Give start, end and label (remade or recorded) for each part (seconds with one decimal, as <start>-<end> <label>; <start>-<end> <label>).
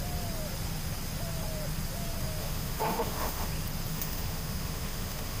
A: 0.0-2.4 recorded; 2.4-3.5 remade; 3.5-3.9 recorded; 3.9-5.4 remade